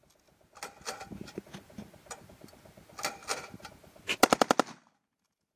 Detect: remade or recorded recorded